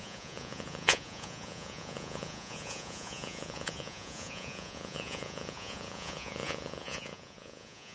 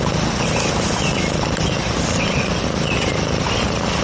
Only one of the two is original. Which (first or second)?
second